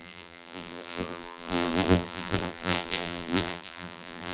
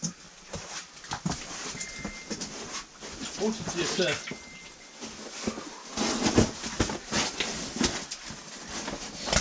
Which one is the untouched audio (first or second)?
second